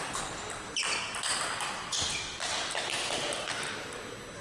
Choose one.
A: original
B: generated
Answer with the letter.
A